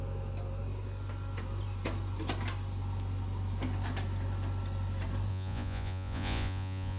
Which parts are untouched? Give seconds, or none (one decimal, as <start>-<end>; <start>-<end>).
0.0-5.3